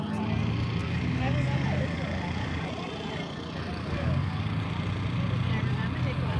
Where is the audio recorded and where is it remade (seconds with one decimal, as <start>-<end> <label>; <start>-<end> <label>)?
0.0-0.8 recorded; 0.8-2.7 remade; 2.7-3.7 recorded; 3.7-4.3 remade; 4.3-6.4 recorded